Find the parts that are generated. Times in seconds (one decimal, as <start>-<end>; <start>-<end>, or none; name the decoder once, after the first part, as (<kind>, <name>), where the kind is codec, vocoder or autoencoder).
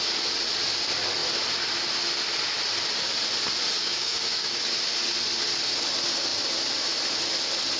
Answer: 3.8-4.6 (codec, DAC)